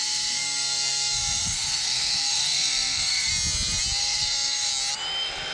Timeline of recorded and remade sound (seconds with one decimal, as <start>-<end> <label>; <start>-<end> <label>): 0.0-3.3 remade; 3.3-4.0 recorded; 4.0-4.7 remade; 4.7-5.5 recorded